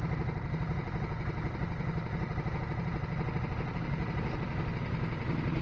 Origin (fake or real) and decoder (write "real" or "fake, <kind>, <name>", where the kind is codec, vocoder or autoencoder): real